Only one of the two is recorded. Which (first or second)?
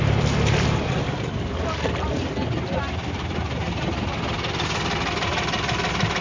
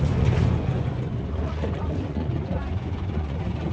first